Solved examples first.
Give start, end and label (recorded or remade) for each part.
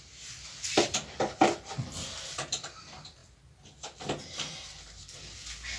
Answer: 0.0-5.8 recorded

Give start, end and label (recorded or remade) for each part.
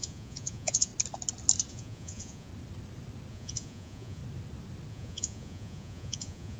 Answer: 0.0-0.9 remade; 0.9-1.7 recorded; 1.7-2.5 remade; 2.5-3.3 recorded; 3.3-4.2 remade; 4.2-4.9 recorded; 4.9-6.6 remade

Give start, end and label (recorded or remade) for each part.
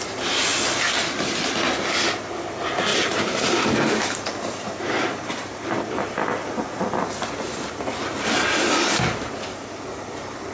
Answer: 0.0-2.9 recorded; 2.9-7.7 remade; 7.7-10.5 recorded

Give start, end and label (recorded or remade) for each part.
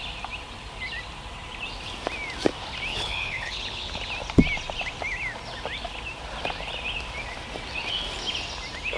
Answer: 0.0-2.9 recorded; 2.9-4.0 remade; 4.0-9.0 recorded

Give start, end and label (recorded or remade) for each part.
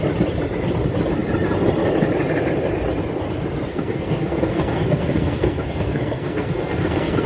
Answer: 0.0-3.7 recorded; 3.7-7.3 remade